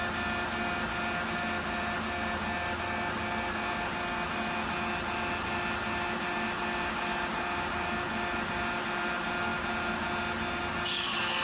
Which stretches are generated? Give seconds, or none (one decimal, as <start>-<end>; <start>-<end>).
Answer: none